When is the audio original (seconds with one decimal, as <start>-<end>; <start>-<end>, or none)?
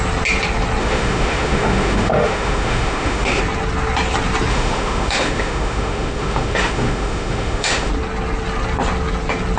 0.0-0.8; 3.4-4.5; 7.9-9.6